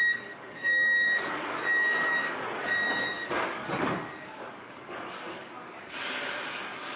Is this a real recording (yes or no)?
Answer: no